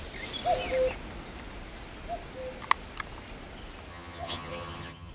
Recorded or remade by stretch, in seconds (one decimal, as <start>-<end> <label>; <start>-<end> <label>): 0.0-3.9 recorded; 3.9-5.1 remade